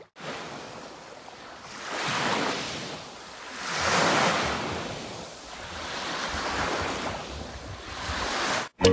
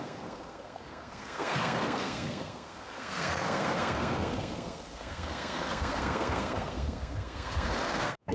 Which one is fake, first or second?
second